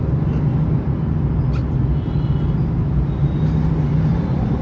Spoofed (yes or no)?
no